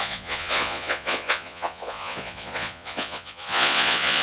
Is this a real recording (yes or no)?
no